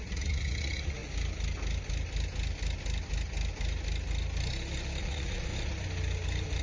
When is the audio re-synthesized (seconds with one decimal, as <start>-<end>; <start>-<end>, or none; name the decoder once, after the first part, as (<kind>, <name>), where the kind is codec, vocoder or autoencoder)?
0.0-1.0 (vocoder, Vocos); 5.0-5.5